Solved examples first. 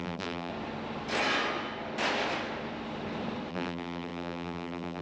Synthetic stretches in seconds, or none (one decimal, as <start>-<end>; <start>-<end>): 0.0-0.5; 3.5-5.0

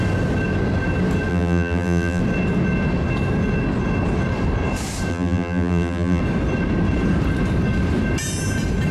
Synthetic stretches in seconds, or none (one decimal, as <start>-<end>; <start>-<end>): 1.3-2.2; 5.1-6.2

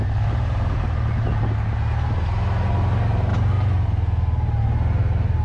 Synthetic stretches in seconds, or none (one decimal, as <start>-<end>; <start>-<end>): none